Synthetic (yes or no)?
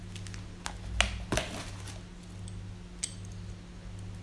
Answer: no